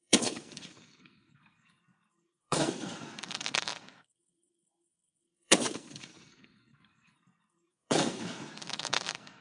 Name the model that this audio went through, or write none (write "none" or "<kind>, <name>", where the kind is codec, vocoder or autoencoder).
codec, SNAC